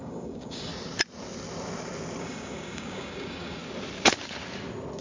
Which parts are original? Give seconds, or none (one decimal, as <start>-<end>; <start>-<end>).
0.7-2.2; 3.6-5.0